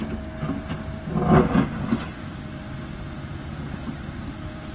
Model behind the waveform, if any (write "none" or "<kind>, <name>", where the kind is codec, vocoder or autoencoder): none